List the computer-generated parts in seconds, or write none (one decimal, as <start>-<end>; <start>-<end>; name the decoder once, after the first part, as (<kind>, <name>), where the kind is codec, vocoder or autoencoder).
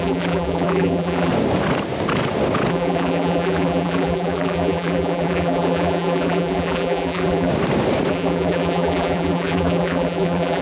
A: 0.0-1.3 (vocoder, BigVGAN v2); 2.7-7.5; 8.1-10.6